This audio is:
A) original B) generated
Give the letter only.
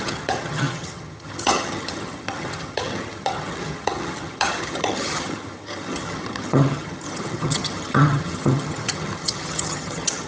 B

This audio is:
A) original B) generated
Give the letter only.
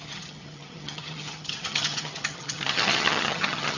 B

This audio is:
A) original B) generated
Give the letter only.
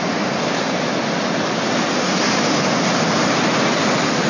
A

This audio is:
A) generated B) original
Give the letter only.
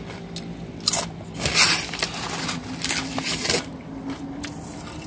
B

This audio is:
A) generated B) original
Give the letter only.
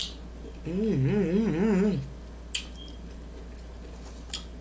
B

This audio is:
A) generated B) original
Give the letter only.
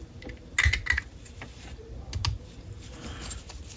B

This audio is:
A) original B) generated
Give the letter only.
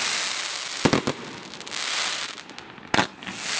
A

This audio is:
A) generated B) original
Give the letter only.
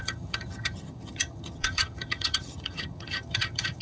A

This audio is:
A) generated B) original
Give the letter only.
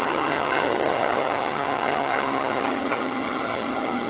A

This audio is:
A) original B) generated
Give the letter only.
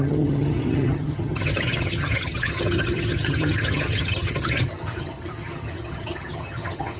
B